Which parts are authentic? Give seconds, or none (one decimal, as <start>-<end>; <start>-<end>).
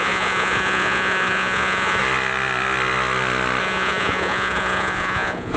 2.0-3.6